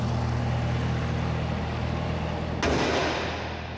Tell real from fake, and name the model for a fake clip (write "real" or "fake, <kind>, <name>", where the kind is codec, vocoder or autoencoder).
real